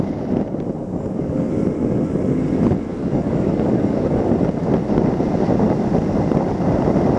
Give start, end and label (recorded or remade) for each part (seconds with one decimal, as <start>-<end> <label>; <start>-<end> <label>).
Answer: 0.0-0.8 recorded; 0.8-1.5 remade; 1.5-3.0 recorded; 3.0-4.2 remade; 4.2-7.2 recorded